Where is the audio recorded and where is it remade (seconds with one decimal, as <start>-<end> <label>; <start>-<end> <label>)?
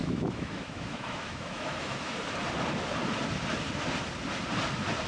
0.0-2.2 remade; 2.2-5.1 recorded